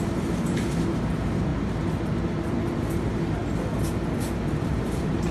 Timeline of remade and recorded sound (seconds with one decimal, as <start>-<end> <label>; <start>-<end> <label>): 0.0-1.5 remade; 1.5-2.8 recorded; 2.8-3.4 remade; 3.4-4.5 recorded; 4.5-5.3 remade